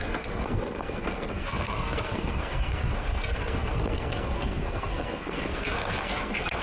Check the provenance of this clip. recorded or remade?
remade